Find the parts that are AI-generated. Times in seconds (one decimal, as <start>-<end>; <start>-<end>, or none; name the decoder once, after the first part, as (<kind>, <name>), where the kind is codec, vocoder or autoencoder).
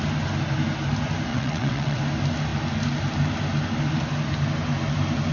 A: 1.3-2.0 (vocoder, WaveNeXt)